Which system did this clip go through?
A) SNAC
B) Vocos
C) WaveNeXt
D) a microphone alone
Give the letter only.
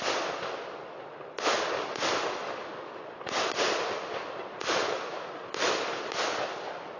D